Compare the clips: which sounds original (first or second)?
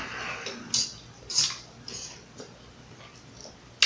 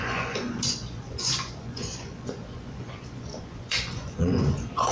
first